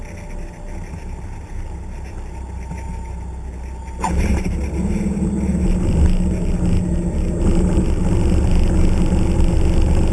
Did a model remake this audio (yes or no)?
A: no